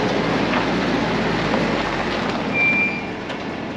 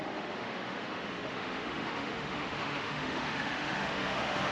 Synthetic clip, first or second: second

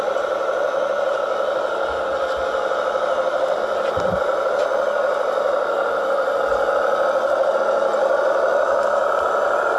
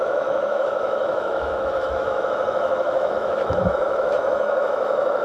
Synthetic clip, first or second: second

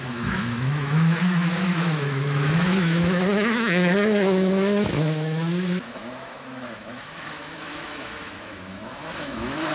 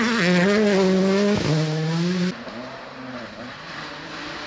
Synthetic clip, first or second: first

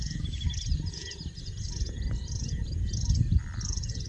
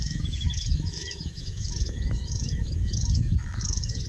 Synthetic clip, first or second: second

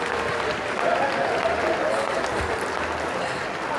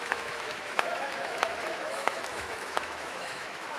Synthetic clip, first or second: second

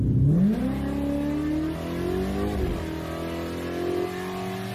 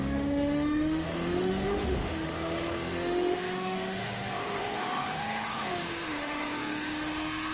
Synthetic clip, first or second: second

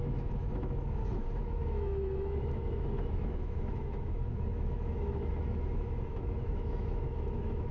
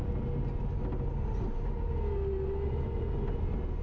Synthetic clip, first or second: first